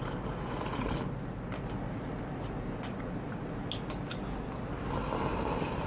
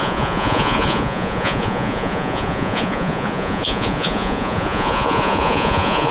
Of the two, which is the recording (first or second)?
first